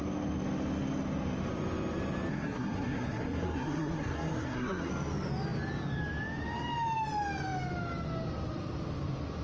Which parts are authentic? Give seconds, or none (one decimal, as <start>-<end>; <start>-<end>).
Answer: 0.0-2.3; 4.9-9.4